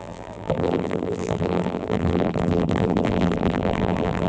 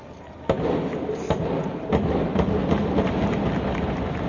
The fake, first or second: first